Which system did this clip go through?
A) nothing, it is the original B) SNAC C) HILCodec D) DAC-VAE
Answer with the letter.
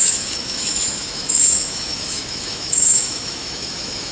D